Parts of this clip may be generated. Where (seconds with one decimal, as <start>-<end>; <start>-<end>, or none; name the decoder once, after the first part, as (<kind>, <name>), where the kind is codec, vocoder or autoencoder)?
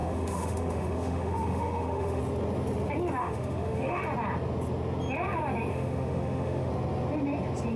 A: 0.0-2.2 (autoencoder, DAC-VAE); 3.2-4.0; 5.7-6.7